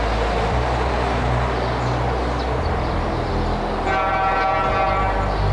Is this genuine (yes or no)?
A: yes